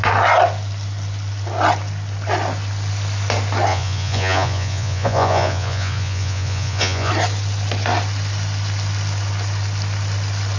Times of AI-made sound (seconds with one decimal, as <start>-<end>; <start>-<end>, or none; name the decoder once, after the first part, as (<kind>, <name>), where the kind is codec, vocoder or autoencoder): 3.7-7.1 (vocoder, Vocos)

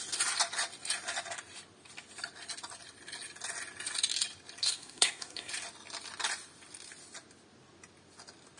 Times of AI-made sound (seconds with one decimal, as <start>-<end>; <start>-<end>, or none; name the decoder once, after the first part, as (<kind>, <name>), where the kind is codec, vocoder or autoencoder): 4.6-5.5 (codec, SNAC)

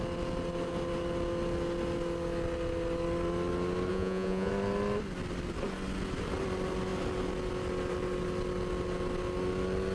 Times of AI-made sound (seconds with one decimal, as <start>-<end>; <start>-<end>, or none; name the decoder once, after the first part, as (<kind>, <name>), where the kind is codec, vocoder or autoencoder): 3.9-4.5 (vocoder, Vocos)